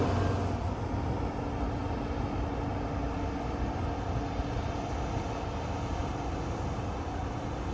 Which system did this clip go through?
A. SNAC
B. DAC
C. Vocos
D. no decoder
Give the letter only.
D